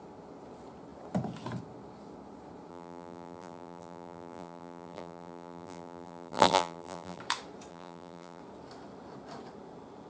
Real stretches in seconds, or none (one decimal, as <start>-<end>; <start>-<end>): 0.0-2.7; 7.2-7.7; 8.4-10.1